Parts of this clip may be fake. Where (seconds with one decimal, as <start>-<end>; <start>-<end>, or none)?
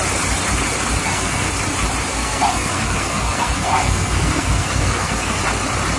1.0-1.5; 2.1-5.4